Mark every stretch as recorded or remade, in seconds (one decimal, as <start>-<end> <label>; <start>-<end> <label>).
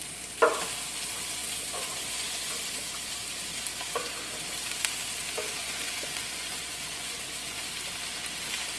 0.0-1.4 recorded; 1.4-2.5 remade; 2.5-5.6 recorded; 5.6-7.6 remade; 7.6-8.8 recorded